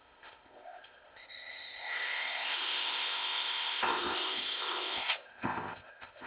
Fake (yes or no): yes